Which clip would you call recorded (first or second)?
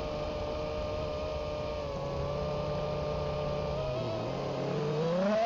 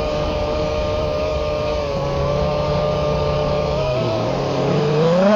first